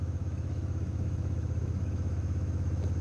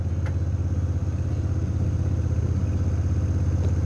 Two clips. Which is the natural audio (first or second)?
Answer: second